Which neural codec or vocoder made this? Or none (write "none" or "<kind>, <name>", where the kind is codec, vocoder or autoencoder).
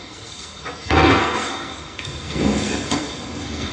codec, SNAC